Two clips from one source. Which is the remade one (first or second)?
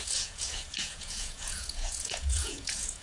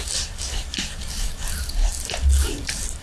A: first